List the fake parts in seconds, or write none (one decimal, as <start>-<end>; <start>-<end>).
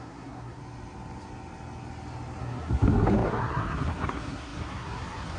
0.0-0.6; 2.4-5.4